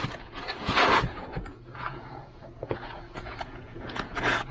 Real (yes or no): no